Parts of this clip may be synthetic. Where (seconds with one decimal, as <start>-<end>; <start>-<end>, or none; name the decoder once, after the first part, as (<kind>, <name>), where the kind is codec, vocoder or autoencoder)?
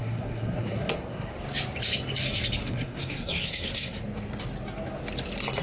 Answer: 0.0-1.3 (codec, SNAC); 2.6-4.0